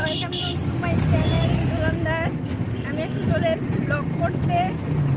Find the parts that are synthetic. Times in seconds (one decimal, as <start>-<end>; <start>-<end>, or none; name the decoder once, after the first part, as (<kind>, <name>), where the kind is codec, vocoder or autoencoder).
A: none